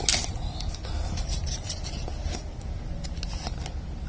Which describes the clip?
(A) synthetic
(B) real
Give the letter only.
B